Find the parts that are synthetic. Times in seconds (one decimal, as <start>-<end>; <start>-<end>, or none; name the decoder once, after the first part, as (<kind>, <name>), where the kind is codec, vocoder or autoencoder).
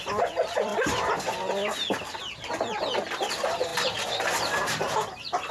0.0-0.7 (vocoder, BigVGAN v2); 3.3-3.7; 4.5-5.5